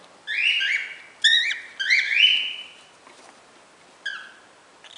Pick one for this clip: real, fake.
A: real